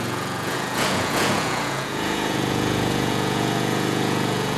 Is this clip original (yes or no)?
no